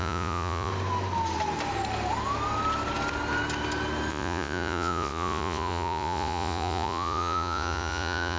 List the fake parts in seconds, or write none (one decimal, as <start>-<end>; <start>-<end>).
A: 0.0-0.7; 4.1-8.4